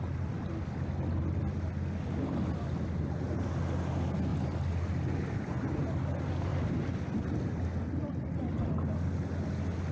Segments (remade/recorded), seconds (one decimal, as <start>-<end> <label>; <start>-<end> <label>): 0.0-9.9 recorded